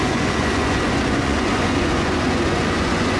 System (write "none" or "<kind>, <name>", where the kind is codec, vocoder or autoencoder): vocoder, Vocos